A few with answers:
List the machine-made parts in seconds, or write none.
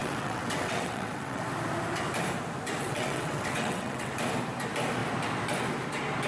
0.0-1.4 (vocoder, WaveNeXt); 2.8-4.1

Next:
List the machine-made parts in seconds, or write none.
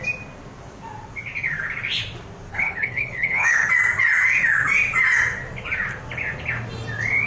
2.5-3.7 (codec, HILCodec)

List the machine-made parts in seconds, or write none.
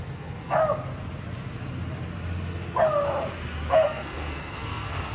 0.0-0.6 (codec, SNAC); 3.7-5.1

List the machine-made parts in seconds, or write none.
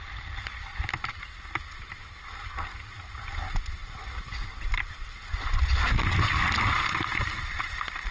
none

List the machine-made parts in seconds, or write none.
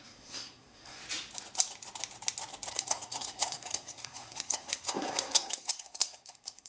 0.0-1.0 (codec, SNAC); 2.7-6.7